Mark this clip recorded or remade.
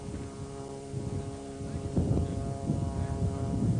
recorded